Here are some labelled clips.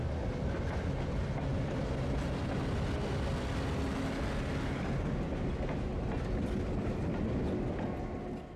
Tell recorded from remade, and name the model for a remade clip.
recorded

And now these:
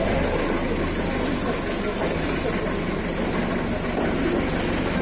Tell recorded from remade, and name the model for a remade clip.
recorded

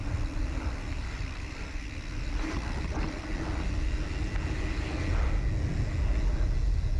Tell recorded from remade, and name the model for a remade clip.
recorded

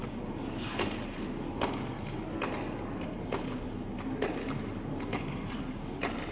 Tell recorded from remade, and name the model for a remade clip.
recorded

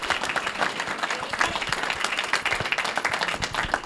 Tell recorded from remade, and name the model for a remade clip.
recorded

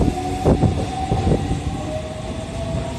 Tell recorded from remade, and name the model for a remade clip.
recorded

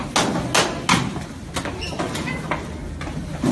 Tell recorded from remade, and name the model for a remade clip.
recorded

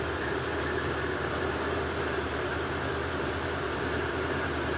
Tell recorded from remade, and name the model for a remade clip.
remade, vocoder, BigVGAN v2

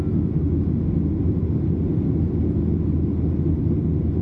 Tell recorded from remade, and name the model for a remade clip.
recorded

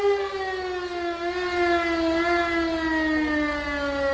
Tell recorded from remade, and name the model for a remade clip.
recorded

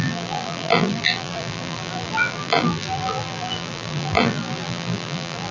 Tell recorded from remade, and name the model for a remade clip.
remade, vocoder, BigVGAN v2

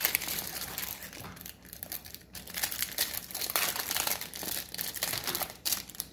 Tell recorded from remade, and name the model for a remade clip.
remade, vocoder, BigVGAN v2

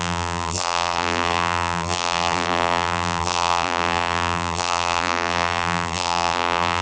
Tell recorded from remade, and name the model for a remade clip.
remade, vocoder, BigVGAN v2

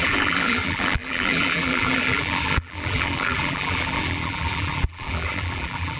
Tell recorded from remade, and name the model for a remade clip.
remade, vocoder, BigVGAN v2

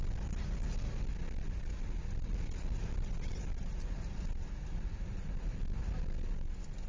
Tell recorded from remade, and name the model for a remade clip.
recorded